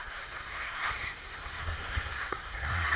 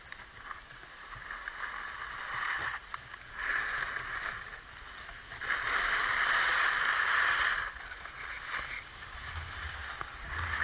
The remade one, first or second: first